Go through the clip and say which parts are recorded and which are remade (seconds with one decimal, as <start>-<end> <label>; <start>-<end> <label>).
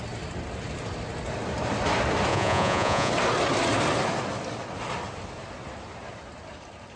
0.0-2.3 recorded; 2.3-3.1 remade; 3.1-7.0 recorded